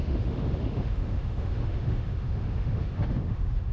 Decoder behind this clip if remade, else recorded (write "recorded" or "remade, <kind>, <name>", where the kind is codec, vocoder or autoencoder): remade, autoencoder, DAC-VAE